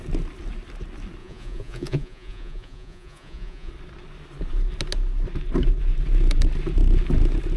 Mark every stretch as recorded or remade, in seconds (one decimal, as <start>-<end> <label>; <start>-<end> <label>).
0.0-1.2 recorded; 1.2-3.7 remade; 3.7-7.6 recorded